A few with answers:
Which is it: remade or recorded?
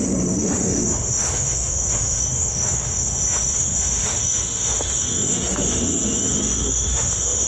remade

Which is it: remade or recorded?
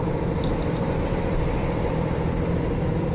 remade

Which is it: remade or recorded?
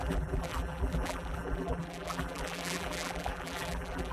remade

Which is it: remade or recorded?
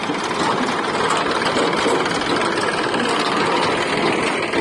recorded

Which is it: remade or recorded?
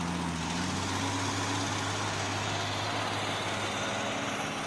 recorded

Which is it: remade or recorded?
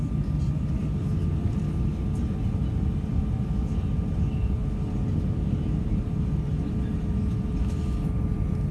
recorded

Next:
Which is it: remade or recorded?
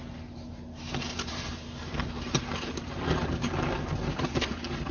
recorded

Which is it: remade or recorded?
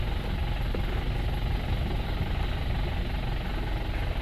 recorded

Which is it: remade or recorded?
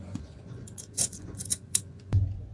remade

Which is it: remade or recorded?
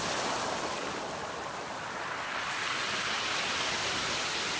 recorded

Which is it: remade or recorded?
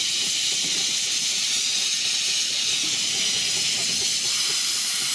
recorded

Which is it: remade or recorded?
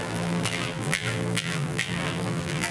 remade